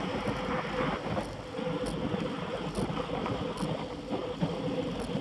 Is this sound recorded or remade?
recorded